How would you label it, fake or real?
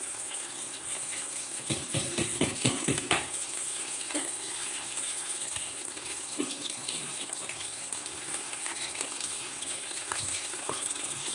fake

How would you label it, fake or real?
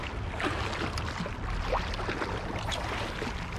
real